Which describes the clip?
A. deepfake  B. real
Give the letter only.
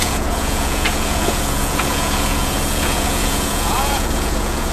A